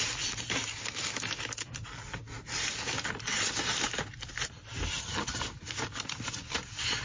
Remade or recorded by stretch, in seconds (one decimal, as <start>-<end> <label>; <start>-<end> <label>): 0.0-4.9 recorded; 4.9-5.4 remade; 5.4-7.0 recorded